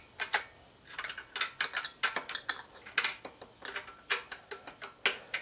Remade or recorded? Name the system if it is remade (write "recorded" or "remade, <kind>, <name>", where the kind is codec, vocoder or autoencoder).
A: recorded